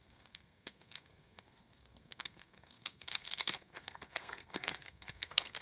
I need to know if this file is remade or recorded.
remade